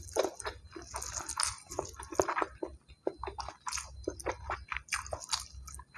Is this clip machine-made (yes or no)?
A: no